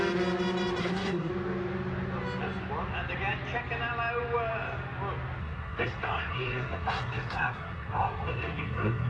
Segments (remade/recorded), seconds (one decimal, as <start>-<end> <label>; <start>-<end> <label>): 0.0-0.8 recorded; 0.8-1.3 remade; 1.3-5.4 recorded; 5.4-9.1 remade